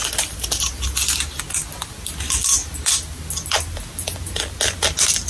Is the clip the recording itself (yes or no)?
yes